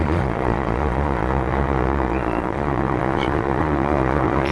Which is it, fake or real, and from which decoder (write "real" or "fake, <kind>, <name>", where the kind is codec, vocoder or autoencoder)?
fake, vocoder, Vocos